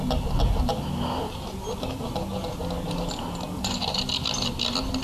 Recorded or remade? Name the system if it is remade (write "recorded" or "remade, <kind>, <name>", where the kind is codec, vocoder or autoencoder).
recorded